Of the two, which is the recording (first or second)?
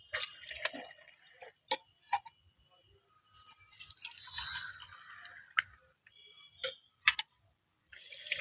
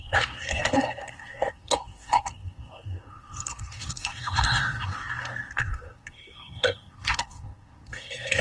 first